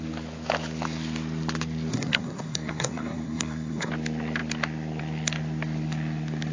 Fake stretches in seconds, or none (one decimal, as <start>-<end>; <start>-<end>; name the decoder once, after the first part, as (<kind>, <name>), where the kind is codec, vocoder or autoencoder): 1.9-3.9 (codec, SNAC)